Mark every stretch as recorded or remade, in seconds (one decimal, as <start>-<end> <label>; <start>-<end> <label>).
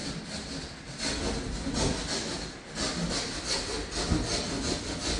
0.0-5.2 recorded